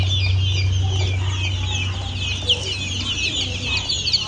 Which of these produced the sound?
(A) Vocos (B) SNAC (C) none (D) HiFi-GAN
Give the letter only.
C